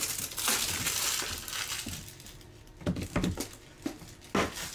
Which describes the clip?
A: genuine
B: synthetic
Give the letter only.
A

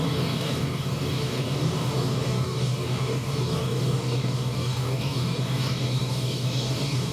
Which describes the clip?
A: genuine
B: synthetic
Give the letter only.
B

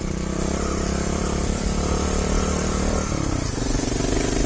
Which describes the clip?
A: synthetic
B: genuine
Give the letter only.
A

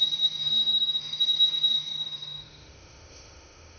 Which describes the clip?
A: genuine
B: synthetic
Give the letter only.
B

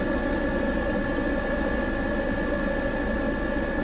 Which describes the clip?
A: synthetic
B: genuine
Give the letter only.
B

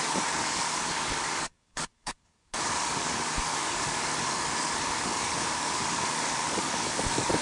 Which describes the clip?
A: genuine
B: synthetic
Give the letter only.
B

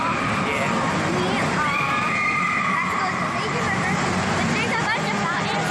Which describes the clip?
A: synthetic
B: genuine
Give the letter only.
B